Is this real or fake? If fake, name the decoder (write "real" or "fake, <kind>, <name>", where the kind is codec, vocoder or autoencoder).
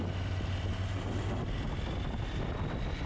real